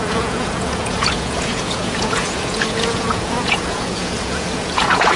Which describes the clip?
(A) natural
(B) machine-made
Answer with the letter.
B